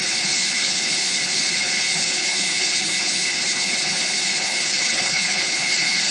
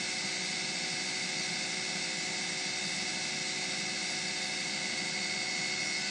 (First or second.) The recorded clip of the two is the second